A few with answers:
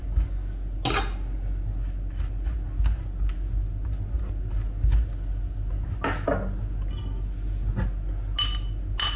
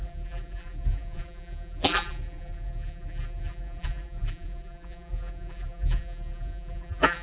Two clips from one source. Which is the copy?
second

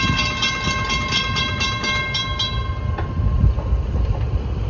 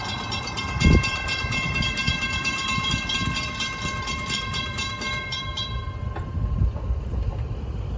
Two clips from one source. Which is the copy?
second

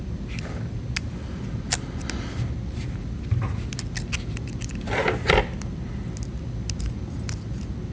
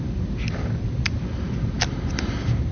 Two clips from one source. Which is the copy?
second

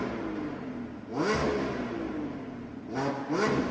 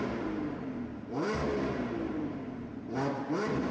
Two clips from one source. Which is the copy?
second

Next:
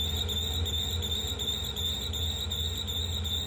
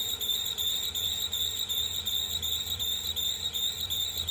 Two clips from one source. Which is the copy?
second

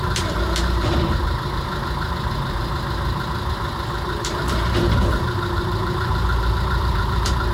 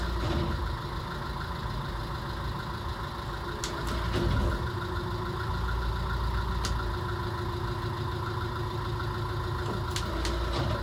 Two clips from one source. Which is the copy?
first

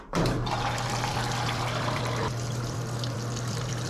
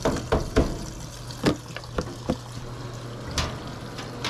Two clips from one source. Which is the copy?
first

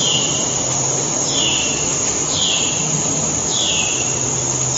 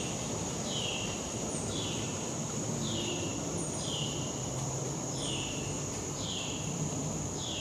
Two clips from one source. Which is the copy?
second